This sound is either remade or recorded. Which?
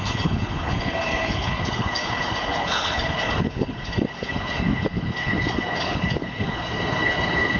remade